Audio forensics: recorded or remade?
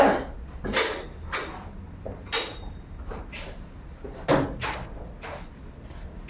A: recorded